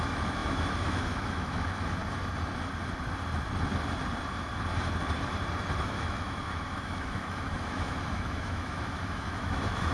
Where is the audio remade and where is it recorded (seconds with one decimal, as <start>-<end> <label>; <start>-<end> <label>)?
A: 0.0-2.0 remade; 2.0-5.8 recorded; 5.8-9.9 remade

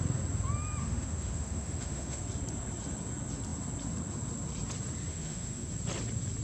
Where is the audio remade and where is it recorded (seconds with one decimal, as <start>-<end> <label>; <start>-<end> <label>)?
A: 0.0-0.8 recorded; 0.8-2.2 remade; 2.2-5.1 recorded; 5.1-5.7 remade; 5.7-6.4 recorded

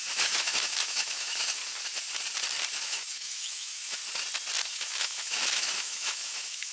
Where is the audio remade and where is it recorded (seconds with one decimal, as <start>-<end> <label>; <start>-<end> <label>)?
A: 0.0-1.6 remade; 1.6-2.7 recorded; 2.7-4.0 remade; 4.0-4.7 recorded; 4.7-6.7 remade

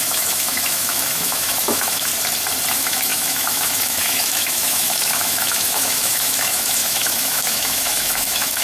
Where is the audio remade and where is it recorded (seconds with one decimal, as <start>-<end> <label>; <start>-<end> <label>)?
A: 0.0-2.1 remade; 2.1-2.7 recorded; 2.7-8.6 remade

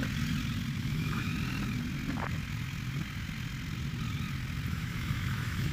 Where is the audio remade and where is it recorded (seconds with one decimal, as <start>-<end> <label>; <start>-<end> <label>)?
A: 0.0-0.8 recorded; 0.8-1.3 remade; 1.3-4.7 recorded; 4.7-5.7 remade

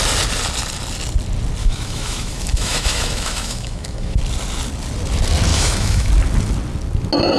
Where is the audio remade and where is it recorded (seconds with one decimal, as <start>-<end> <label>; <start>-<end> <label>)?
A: 0.0-1.6 recorded; 1.6-4.2 remade; 4.2-5.5 recorded; 5.5-6.1 remade; 6.1-7.4 recorded